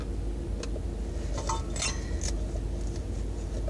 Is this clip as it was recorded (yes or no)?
yes